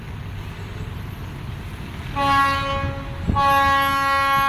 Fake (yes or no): no